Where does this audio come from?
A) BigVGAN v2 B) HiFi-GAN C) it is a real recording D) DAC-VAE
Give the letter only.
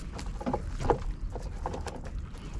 C